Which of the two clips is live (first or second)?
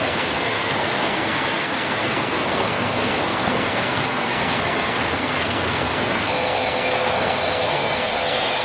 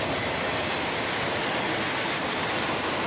second